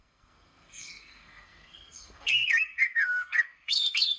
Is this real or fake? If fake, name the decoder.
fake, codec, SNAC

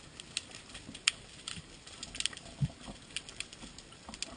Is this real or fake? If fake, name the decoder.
real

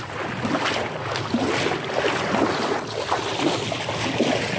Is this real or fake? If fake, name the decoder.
real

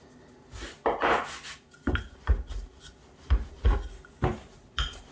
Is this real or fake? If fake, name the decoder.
real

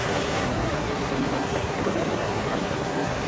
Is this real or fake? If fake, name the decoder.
fake, codec, SNAC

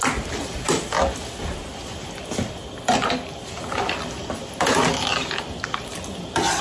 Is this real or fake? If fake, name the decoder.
real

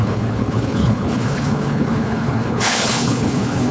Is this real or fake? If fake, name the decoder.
fake, codec, HILCodec